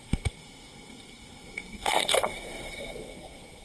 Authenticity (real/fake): fake